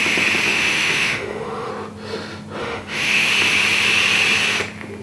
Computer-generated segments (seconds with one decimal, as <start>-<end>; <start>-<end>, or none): 0.5-1.7; 2.6-3.3